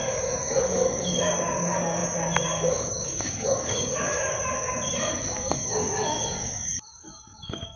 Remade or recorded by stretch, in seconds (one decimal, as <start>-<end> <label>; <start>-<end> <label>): 0.0-7.8 remade